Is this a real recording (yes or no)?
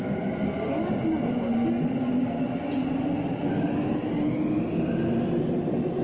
yes